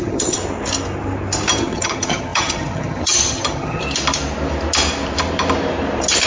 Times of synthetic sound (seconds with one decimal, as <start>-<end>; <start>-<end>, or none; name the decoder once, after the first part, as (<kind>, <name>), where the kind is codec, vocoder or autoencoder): 0.0-0.4 (vocoder, HiFi-GAN); 1.6-3.8

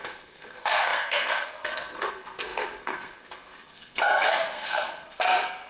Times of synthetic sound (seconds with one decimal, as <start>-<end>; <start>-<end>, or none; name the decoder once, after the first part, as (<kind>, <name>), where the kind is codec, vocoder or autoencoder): 0.0-5.7 (codec, SNAC)

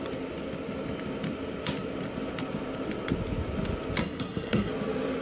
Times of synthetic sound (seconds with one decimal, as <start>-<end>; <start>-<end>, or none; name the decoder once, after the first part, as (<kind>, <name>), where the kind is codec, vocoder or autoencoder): 4.0-4.7 (codec, SNAC)

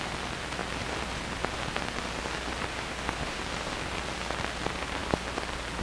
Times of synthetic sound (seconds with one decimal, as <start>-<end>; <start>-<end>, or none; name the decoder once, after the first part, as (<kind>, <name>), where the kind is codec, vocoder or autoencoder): 2.7-3.4 (autoencoder, DAC-VAE)

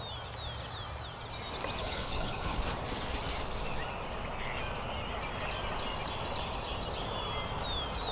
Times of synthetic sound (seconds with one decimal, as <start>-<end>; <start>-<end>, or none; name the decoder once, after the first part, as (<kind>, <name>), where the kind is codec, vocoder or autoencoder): 1.8-2.6 (codec, HILCodec)

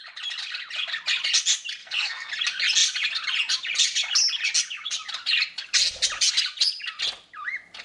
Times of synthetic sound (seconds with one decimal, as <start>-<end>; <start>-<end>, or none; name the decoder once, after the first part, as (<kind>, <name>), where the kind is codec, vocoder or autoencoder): 1.8-2.3 (codec, SNAC)

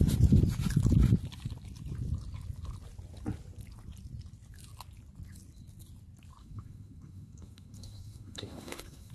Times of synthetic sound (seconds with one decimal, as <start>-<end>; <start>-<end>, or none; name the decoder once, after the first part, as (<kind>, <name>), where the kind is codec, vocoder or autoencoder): 6.4-9.1 (codec, SNAC)

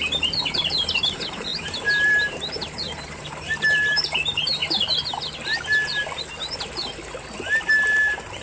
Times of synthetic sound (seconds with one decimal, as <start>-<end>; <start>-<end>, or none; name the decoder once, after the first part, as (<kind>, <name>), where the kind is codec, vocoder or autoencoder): 0.0-4.6 (vocoder, BigVGAN v2); 7.9-8.4